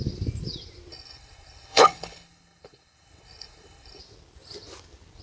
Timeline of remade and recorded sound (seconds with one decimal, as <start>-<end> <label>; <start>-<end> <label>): 0.0-0.9 recorded; 0.9-4.0 remade; 4.0-5.2 recorded